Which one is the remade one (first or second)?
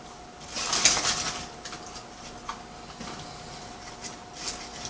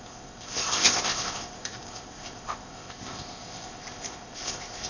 second